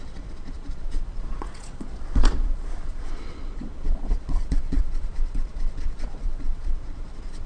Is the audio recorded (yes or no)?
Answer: no